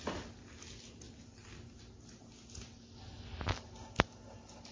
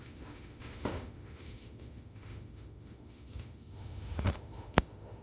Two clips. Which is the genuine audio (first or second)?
first